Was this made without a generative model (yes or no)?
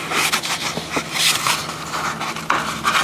yes